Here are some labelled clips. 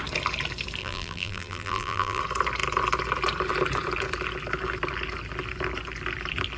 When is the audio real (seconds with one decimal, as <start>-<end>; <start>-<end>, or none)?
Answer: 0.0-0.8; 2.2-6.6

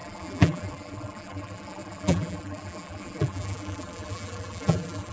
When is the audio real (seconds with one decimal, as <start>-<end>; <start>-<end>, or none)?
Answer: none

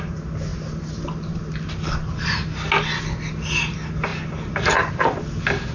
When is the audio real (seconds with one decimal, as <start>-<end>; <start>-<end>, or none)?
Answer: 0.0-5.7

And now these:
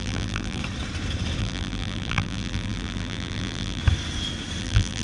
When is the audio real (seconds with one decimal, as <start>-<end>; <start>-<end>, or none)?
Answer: 0.6-1.4; 3.8-4.6

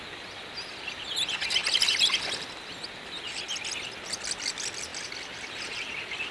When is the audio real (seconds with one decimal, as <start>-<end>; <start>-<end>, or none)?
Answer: 0.0-6.3

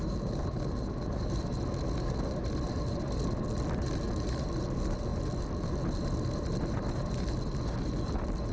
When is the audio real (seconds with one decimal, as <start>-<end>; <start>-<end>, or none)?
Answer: 0.0-8.5

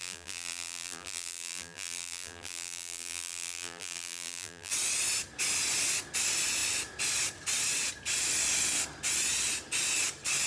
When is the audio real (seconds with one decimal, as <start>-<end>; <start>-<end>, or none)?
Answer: 4.7-10.5